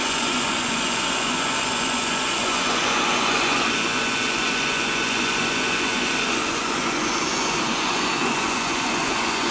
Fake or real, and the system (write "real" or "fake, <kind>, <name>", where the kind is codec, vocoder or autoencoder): fake, vocoder, Vocos